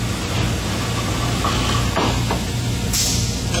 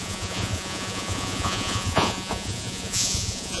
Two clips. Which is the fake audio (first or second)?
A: second